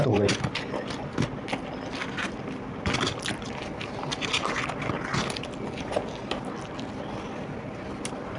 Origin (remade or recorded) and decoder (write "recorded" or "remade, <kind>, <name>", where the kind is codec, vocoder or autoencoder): recorded